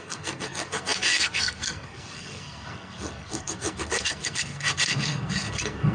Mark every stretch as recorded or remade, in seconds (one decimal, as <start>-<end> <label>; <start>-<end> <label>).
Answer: 0.0-5.9 remade